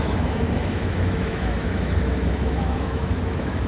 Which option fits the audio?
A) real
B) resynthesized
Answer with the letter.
B